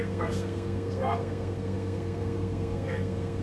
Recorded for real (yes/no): no